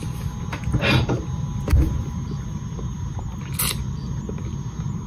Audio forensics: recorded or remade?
recorded